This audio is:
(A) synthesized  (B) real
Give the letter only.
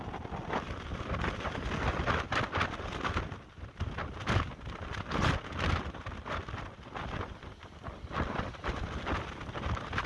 B